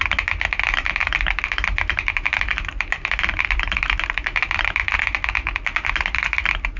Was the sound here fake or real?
real